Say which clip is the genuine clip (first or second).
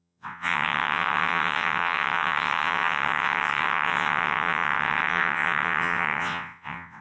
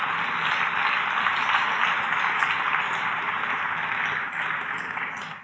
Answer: second